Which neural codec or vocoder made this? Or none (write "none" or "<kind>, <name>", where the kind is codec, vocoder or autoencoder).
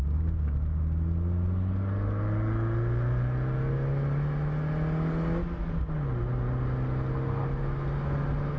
none